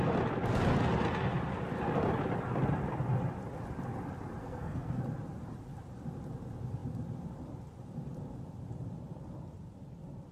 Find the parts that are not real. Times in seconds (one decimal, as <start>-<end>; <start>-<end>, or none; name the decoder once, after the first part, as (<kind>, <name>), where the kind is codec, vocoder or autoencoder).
4.4-5.0 (codec, SNAC)